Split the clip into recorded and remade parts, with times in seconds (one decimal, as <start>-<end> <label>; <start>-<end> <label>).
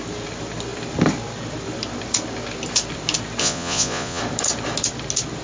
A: 0.0-3.4 recorded; 3.4-4.2 remade; 4.2-5.4 recorded